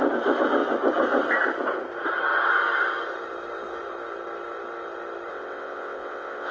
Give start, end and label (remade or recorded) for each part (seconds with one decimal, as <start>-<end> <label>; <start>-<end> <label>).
0.0-5.3 recorded; 5.3-6.5 remade